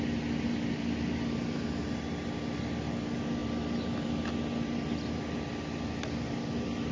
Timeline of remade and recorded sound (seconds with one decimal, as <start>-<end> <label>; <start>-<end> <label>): 0.0-6.9 recorded